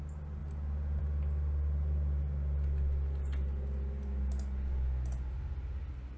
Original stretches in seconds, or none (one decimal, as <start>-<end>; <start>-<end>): 0.0-6.2